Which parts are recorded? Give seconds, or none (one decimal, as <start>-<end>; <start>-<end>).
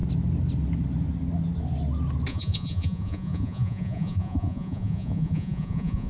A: 0.0-2.3